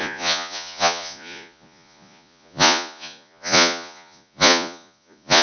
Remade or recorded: remade